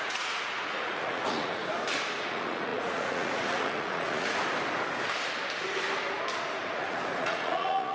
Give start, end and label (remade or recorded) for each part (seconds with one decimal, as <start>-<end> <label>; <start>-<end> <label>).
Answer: 0.0-1.6 remade; 1.6-2.2 recorded; 2.2-4.4 remade; 4.4-6.6 recorded; 6.6-7.9 remade